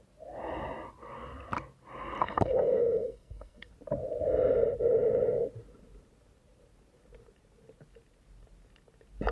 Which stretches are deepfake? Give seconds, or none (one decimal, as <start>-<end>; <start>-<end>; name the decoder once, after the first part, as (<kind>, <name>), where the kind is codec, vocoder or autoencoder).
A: 2.2-3.7 (codec, SNAC)